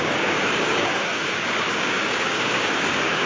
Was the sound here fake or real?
fake